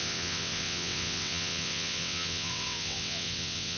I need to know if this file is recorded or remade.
remade